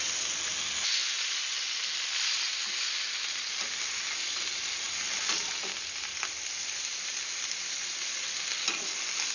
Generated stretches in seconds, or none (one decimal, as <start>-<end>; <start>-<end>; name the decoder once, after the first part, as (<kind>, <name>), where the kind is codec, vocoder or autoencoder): none